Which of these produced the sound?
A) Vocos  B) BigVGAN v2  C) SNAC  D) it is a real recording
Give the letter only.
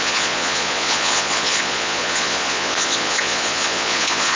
A